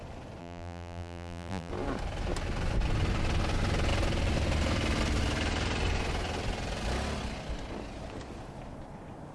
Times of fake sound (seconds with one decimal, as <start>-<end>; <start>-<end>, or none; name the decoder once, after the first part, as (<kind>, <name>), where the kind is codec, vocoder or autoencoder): 0.4-1.7 (vocoder, BigVGAN v2)